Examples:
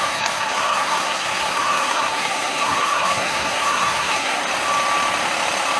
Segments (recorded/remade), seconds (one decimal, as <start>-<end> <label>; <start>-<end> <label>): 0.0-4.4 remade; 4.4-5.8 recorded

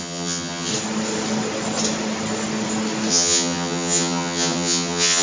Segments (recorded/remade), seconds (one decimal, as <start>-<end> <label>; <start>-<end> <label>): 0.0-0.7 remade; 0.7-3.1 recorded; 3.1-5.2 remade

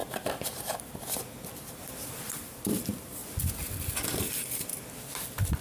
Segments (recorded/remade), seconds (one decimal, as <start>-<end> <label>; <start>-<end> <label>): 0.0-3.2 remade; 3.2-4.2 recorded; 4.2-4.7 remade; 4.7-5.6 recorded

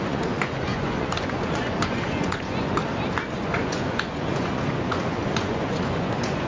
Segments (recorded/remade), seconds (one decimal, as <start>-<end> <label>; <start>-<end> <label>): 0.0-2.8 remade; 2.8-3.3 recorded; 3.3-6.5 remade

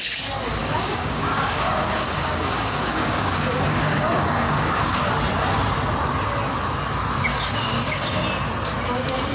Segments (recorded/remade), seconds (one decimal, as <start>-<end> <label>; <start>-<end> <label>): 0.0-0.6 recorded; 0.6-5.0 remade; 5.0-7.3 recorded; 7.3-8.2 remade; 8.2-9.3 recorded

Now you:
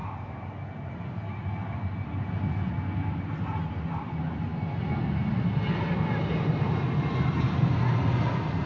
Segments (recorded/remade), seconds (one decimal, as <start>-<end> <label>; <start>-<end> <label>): 0.0-8.7 recorded

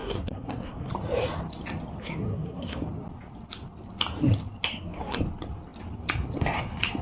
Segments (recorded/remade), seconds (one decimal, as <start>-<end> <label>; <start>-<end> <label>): 0.0-0.9 remade; 0.9-2.0 recorded; 2.0-2.8 remade; 2.8-4.7 recorded; 4.7-5.2 remade; 5.2-7.0 recorded